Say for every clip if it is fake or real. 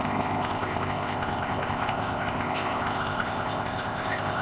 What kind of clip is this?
fake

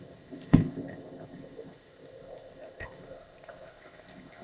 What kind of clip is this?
fake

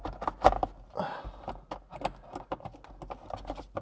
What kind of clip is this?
real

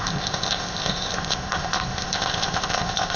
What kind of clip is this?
fake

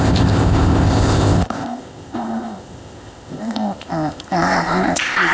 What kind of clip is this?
fake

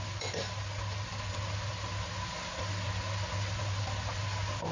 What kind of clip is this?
real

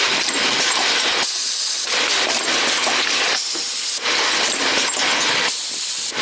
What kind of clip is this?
real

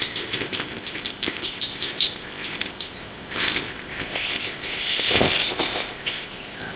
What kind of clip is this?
fake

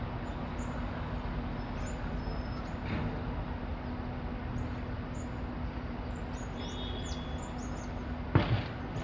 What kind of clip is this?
real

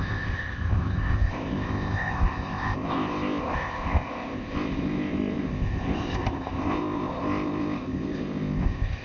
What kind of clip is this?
fake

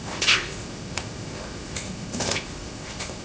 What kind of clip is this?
fake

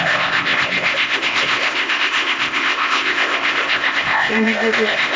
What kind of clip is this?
fake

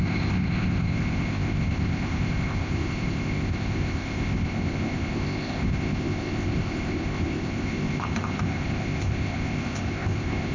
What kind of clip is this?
fake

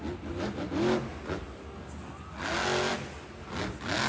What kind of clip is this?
real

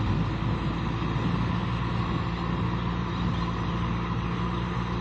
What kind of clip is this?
real